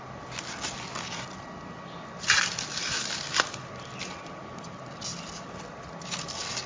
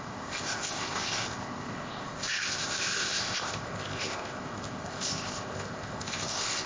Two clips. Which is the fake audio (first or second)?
second